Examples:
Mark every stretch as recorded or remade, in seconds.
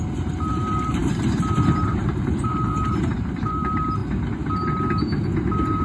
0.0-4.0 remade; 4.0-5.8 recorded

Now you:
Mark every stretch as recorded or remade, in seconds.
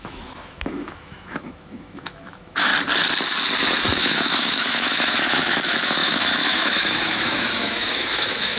0.0-2.7 remade; 2.7-3.9 recorded; 3.9-8.6 remade